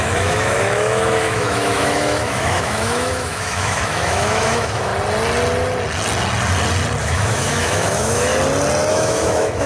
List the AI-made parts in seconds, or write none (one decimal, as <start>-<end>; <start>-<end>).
0.0-4.9; 7.0-8.3; 8.9-9.7